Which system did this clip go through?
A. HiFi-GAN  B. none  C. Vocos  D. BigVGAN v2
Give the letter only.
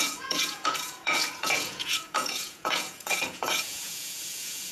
C